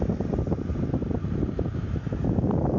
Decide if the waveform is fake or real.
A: real